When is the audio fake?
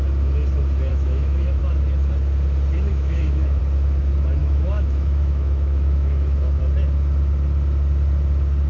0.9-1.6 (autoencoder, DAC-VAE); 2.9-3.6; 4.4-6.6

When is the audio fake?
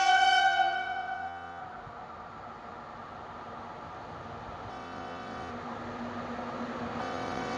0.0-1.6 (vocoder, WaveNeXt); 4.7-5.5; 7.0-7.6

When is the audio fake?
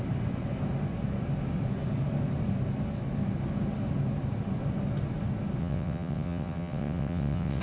5.6-7.6 (vocoder, WaveNeXt)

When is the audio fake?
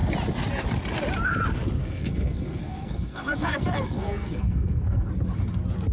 1.8-5.1 (codec, SNAC)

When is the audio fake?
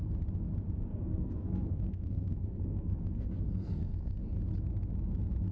0.9-4.2 (codec, SNAC)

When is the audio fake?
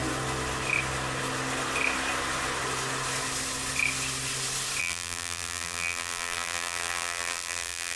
4.8-8.0 (vocoder, BigVGAN v2)